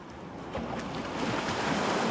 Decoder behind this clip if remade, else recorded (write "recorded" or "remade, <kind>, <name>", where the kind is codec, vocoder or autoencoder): recorded